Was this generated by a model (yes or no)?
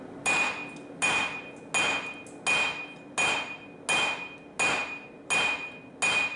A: no